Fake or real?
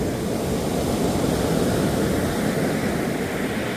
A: real